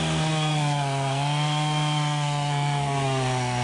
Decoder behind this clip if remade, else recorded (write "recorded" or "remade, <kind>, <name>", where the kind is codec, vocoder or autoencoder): remade, codec, SNAC